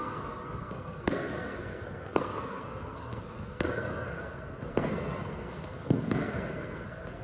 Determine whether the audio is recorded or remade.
remade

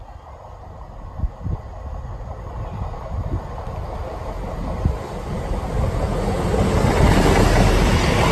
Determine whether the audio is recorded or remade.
recorded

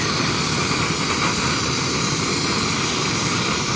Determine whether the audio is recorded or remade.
recorded